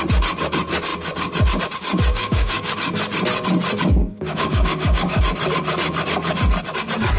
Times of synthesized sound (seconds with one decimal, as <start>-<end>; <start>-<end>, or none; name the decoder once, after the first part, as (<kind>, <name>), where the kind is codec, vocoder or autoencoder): 2.1-2.7 (codec, DAC); 4.0-5.2